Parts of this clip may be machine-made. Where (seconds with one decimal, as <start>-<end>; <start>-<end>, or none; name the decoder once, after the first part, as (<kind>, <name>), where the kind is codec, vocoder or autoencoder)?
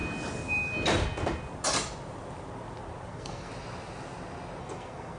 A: 3.1-3.5 (codec, SNAC); 4.6-5.2